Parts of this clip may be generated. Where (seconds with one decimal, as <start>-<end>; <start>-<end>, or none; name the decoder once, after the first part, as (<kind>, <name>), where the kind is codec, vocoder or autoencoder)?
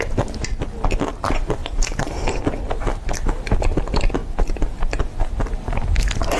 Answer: 1.6-2.2 (vocoder, BigVGAN v2); 4.2-5.3